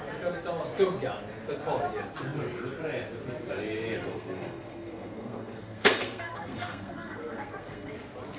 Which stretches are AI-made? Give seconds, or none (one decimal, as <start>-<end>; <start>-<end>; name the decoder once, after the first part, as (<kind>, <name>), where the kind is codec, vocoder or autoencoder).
4.1-7.9 (codec, SNAC)